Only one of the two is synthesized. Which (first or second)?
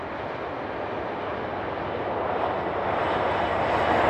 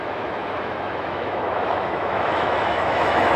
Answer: second